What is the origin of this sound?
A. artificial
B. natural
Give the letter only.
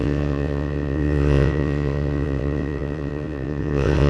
A